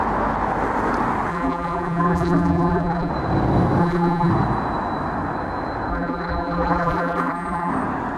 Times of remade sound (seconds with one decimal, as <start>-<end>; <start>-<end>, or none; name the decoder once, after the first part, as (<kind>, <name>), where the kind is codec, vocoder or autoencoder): 1.3-3.1 (vocoder, BigVGAN v2); 3.8-4.3; 5.9-7.7